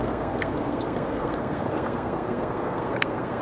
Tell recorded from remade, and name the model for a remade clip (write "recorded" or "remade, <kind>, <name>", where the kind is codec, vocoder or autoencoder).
remade, codec, SNAC